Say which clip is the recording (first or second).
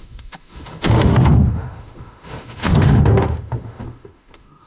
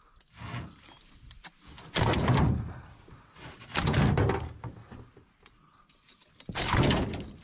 second